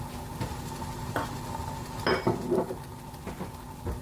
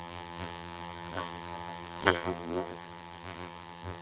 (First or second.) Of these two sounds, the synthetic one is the second